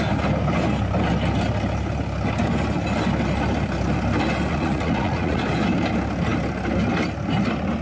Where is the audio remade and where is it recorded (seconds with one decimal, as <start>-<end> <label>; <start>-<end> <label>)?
0.0-4.5 recorded; 4.5-5.4 remade; 5.4-7.8 recorded